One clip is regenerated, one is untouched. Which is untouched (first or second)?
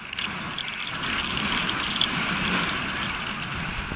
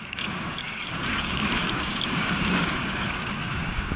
first